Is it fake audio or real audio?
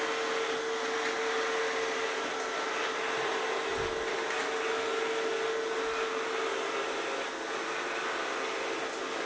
real